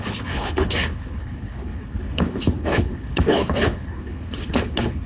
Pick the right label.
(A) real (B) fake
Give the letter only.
B